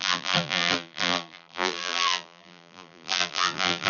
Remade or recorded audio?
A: remade